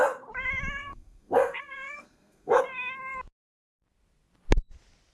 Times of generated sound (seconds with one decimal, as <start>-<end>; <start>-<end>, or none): 0.8-2.6